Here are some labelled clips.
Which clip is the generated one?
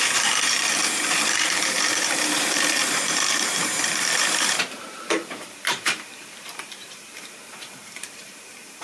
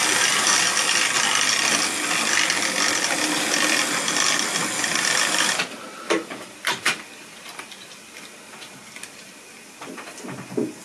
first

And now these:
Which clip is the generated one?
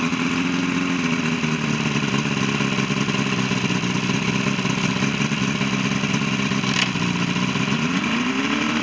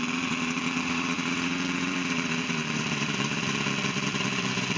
second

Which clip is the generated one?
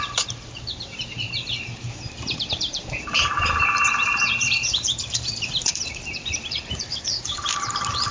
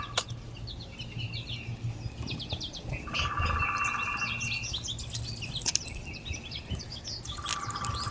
first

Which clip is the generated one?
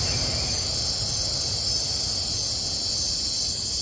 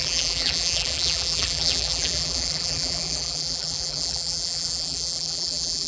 second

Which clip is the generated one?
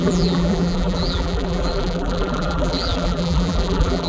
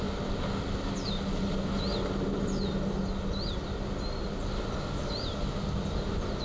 first